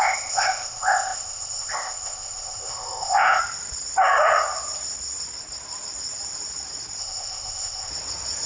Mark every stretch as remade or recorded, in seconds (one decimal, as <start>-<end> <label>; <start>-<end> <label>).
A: 0.0-3.4 remade; 3.4-7.0 recorded; 7.0-7.9 remade; 7.9-8.5 recorded